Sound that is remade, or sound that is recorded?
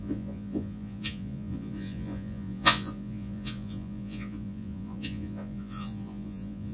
remade